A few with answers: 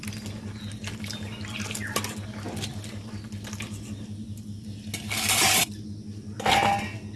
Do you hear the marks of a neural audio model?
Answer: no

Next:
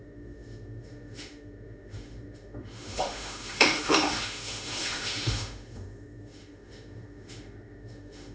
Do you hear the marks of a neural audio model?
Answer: yes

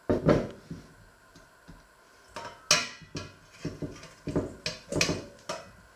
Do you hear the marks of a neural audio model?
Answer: no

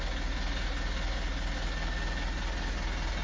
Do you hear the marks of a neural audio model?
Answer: no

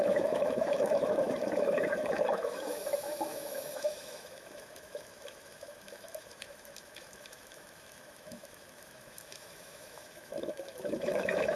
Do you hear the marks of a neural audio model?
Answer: yes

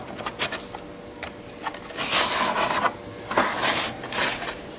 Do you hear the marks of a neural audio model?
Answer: no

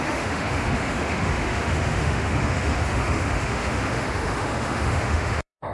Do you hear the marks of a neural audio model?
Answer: yes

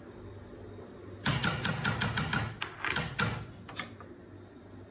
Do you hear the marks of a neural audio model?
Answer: no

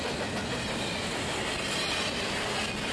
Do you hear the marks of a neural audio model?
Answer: no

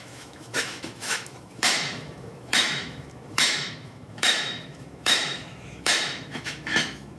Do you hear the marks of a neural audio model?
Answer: yes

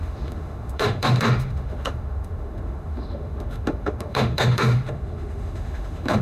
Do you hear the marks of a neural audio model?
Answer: yes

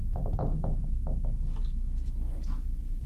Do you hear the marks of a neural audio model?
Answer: no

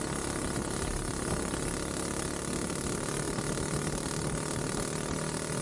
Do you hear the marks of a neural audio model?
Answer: no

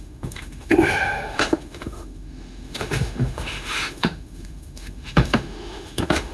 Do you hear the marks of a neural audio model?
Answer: yes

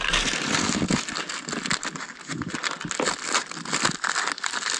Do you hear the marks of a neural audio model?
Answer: no